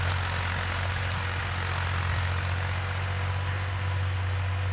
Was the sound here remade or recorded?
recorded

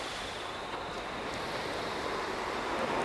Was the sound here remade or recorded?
recorded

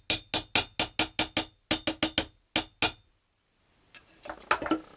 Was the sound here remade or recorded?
recorded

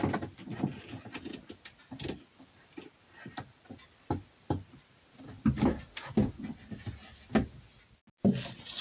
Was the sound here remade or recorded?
recorded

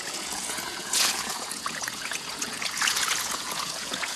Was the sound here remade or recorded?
remade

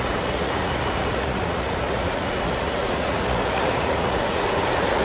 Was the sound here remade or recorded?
remade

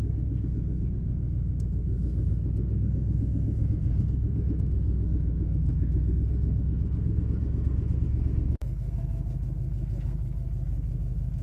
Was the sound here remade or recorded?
remade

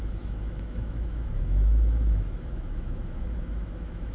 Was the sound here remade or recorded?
remade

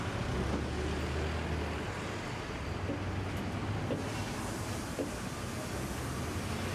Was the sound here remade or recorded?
recorded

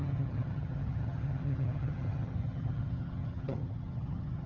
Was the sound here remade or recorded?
remade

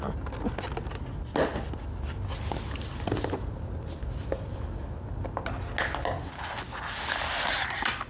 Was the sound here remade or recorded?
recorded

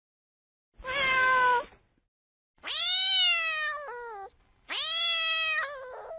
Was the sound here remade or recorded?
recorded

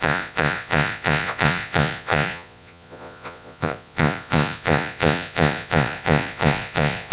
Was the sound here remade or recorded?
remade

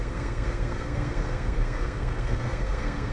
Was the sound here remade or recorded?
remade